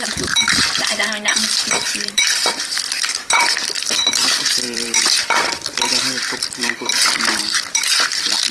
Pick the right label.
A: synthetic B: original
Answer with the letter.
A